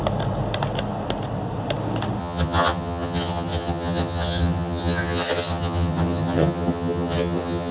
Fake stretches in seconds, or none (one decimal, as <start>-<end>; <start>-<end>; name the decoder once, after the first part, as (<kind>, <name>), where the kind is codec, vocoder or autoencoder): 2.2-7.7 (vocoder, HiFi-GAN)